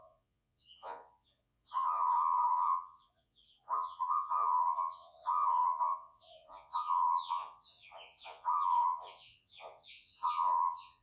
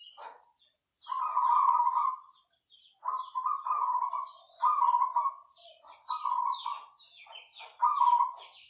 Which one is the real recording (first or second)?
second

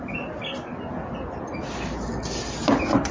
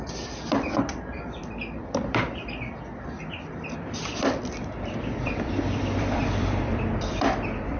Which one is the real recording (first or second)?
first